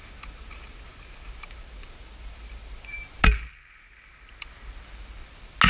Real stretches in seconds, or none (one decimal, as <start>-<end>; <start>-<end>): 0.0-5.7